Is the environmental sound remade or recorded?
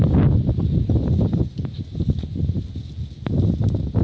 recorded